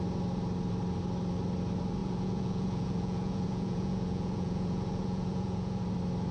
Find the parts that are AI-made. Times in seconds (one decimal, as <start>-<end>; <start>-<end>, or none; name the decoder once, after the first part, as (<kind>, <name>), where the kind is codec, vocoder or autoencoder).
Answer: 2.0-5.8 (vocoder, Vocos)